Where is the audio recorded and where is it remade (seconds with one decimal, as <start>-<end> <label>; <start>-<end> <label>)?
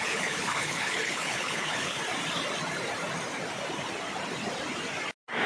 0.0-2.0 remade; 2.0-5.5 recorded